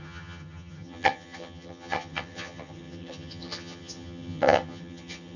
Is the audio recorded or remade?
remade